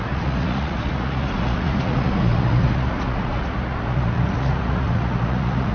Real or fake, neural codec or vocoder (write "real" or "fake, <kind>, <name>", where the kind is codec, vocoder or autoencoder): fake, vocoder, Vocos